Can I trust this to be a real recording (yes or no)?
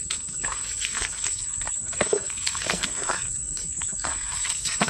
no